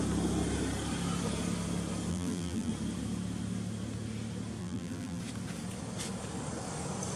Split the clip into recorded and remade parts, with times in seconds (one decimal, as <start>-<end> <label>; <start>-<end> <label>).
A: 0.0-2.1 recorded; 2.1-2.7 remade; 2.7-4.6 recorded; 4.6-5.2 remade; 5.2-7.2 recorded